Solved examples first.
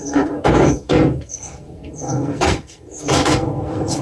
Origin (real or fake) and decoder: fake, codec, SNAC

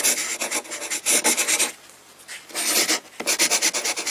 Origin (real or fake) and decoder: real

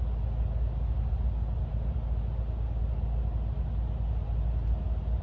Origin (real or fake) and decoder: real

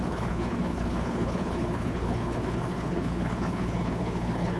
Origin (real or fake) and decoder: fake, codec, HILCodec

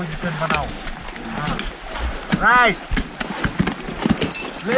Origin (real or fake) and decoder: real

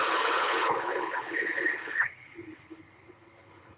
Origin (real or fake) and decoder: fake, codec, HILCodec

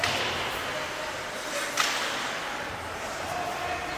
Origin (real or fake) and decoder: real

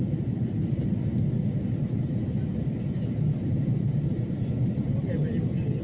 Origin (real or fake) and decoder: real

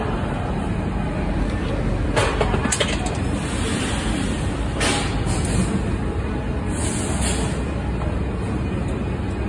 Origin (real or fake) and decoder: real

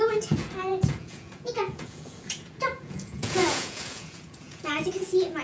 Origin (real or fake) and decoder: fake, vocoder, Vocos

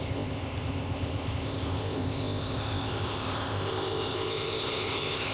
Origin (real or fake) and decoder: fake, codec, ZipCodec